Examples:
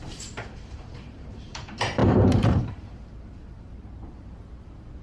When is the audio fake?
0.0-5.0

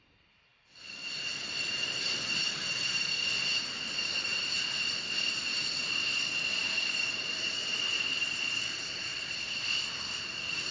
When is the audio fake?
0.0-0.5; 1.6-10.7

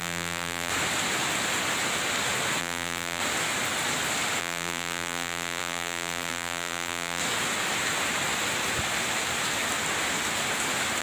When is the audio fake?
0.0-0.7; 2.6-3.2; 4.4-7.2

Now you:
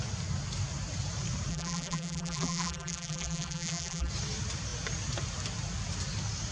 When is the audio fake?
1.5-4.1

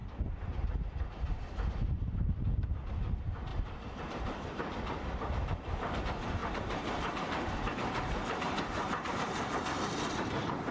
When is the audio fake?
3.5-6.0; 6.4-9.1

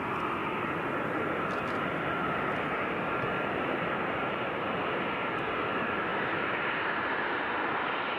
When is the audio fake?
none

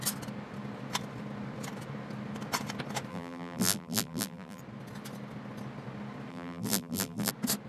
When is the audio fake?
3.1-4.6; 6.3-7.3

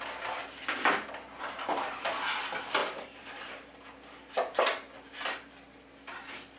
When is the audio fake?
none